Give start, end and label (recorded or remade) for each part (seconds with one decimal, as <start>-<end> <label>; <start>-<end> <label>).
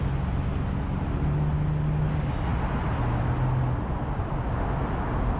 0.0-5.4 recorded